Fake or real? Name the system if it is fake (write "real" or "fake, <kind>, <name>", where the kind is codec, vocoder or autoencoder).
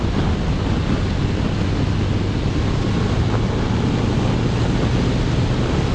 real